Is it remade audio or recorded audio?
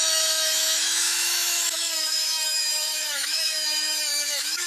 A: remade